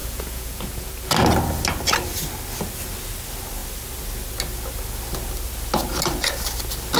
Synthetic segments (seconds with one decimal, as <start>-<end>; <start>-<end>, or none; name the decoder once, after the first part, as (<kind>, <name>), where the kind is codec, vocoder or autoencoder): 0.0-0.9 (vocoder, Vocos)